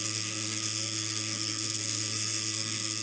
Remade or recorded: remade